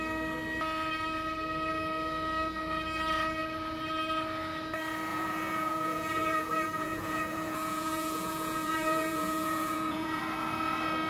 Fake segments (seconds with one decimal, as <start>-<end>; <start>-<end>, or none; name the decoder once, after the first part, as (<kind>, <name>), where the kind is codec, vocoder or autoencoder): 5.1-10.2 (vocoder, Vocos)